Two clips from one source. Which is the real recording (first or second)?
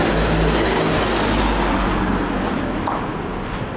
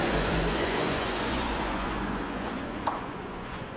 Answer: first